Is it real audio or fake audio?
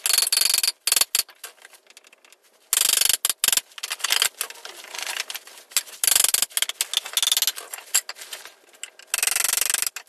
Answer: real